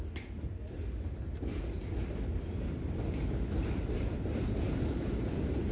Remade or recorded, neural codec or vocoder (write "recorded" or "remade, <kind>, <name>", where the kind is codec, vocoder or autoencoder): recorded